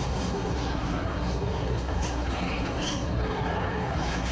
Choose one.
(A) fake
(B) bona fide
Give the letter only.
A